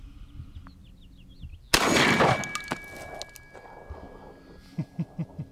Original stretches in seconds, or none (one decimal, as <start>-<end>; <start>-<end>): 0.0-5.5